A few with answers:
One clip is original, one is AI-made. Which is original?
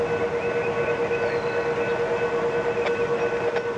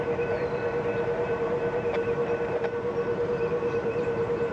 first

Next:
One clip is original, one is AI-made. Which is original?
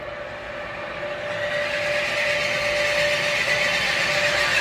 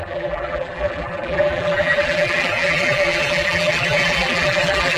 first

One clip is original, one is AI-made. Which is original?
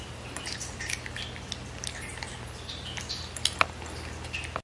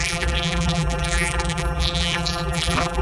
first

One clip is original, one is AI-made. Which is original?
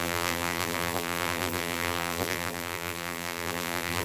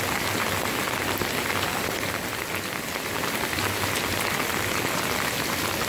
second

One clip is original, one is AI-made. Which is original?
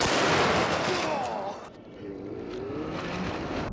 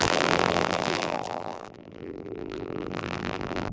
first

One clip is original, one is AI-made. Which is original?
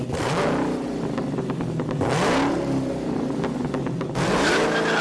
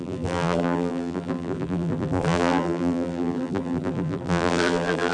first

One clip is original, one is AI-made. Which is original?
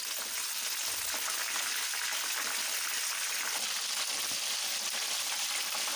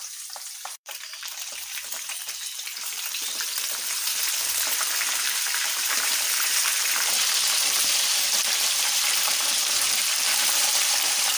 first